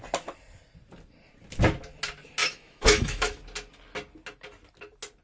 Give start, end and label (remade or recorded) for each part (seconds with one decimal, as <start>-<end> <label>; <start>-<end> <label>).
0.0-2.4 recorded; 2.4-3.4 remade; 3.4-5.2 recorded